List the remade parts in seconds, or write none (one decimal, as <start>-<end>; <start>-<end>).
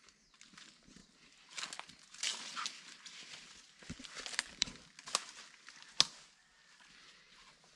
none